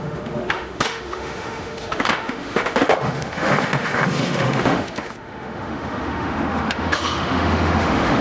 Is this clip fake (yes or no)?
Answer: yes